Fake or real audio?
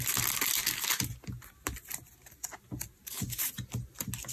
real